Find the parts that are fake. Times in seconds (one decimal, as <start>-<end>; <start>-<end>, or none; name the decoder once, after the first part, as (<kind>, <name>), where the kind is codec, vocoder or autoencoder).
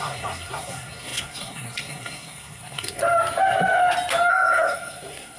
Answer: 0.0-3.0 (codec, SNAC); 4.3-5.4